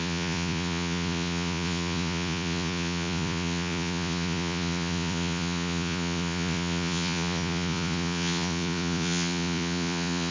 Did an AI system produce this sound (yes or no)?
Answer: yes